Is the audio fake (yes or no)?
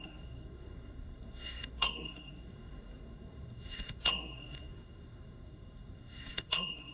yes